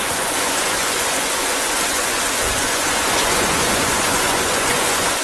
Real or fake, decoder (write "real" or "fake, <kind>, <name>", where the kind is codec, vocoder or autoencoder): fake, vocoder, Vocos